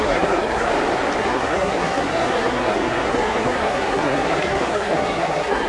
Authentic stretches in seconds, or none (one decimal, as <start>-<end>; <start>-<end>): 0.7-1.2